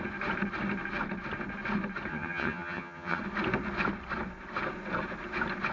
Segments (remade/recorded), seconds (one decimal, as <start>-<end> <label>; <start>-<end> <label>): 0.0-2.1 recorded; 2.1-3.2 remade; 3.2-5.7 recorded